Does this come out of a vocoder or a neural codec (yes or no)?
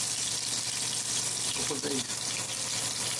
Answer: no